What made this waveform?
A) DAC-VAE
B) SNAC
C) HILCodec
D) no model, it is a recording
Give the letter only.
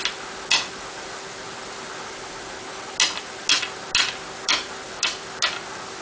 D